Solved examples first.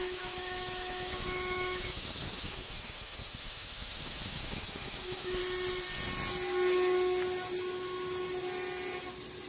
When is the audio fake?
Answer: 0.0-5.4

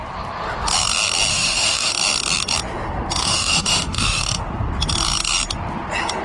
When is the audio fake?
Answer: 1.3-1.9; 3.2-4.4

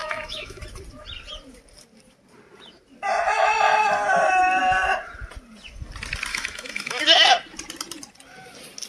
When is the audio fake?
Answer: 0.0-0.6; 6.3-7.0

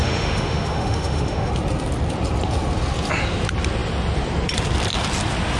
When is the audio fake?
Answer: 0.0-1.5